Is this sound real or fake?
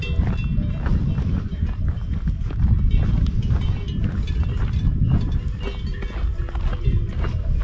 real